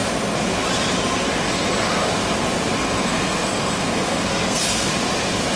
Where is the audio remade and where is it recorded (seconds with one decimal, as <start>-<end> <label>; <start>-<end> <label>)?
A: 0.0-2.8 recorded; 2.8-4.9 remade; 4.9-5.6 recorded